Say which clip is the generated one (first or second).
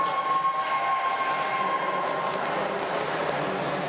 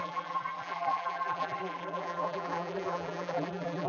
second